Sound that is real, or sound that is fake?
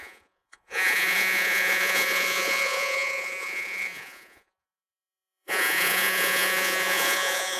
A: fake